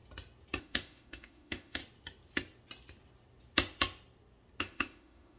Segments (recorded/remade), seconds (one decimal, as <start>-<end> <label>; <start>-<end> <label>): 0.0-0.6 recorded; 0.6-1.8 remade; 1.8-4.6 recorded; 4.6-5.4 remade